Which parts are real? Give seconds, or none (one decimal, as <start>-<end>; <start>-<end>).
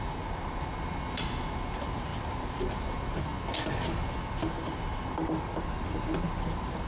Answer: 0.0-6.9